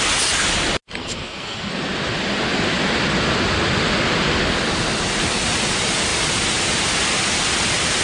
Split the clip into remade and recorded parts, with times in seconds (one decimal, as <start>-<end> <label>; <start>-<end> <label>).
0.0-1.0 recorded; 1.0-1.7 remade; 1.7-8.0 recorded